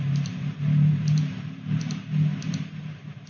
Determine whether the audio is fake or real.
fake